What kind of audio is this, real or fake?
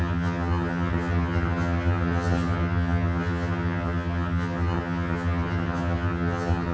fake